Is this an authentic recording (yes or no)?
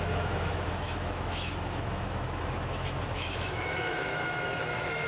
no